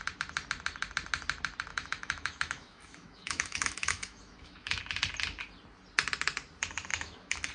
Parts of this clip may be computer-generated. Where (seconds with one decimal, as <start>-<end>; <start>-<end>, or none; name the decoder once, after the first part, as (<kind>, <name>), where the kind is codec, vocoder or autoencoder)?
1.7-4.8 (autoencoder, DAC-VAE); 6.9-7.5